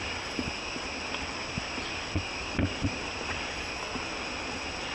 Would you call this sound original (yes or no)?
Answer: yes